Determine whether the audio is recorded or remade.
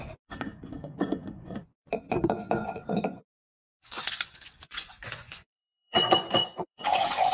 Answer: remade